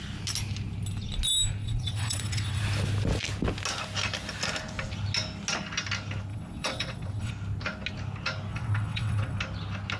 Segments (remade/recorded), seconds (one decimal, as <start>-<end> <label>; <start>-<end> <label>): 0.0-1.6 recorded; 1.6-2.6 remade; 2.6-6.3 recorded; 6.3-7.3 remade; 7.3-8.5 recorded; 8.5-9.4 remade; 9.4-10.0 recorded